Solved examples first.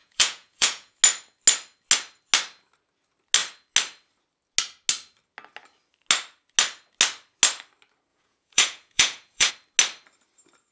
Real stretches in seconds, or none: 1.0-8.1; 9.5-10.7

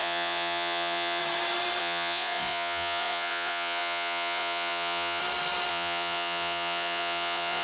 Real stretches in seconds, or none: 1.2-1.8; 5.2-5.7

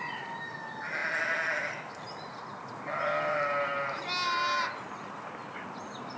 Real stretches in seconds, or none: 0.0-6.2

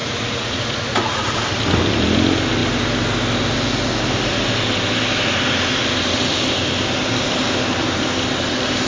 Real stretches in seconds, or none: 1.4-8.9

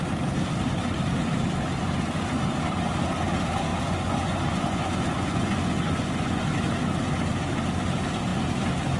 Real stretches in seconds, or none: 0.0-3.7; 6.4-9.0

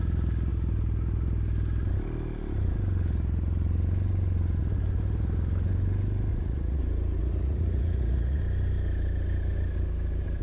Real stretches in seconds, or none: 0.0-6.3; 6.8-7.2; 8.4-10.4

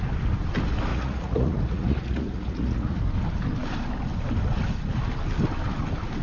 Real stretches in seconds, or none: 0.0-0.9; 3.0-6.2